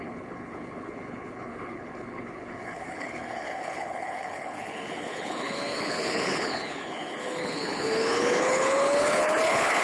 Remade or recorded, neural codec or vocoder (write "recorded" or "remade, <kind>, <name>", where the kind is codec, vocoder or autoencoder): remade, codec, HILCodec